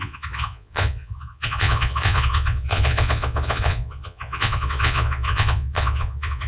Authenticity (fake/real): fake